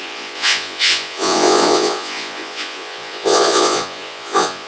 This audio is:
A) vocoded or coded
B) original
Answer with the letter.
A